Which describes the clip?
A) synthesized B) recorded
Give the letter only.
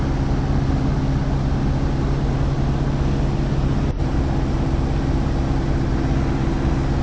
B